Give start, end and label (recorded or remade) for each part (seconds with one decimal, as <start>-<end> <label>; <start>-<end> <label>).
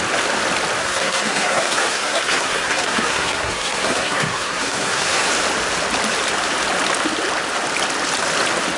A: 0.0-0.8 recorded; 0.8-5.3 remade; 5.3-8.8 recorded